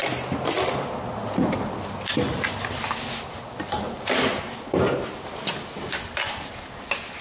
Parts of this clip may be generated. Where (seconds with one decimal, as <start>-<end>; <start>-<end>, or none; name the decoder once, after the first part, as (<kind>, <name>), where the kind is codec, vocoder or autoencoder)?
none